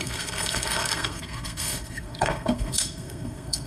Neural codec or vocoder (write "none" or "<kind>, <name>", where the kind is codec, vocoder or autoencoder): codec, SNAC